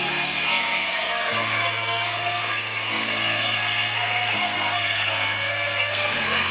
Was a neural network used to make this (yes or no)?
yes